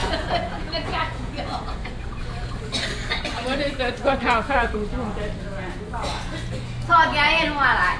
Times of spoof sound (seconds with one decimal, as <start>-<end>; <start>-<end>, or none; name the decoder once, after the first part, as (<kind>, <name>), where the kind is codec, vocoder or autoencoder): 0.0-1.7 (vocoder, Vocos)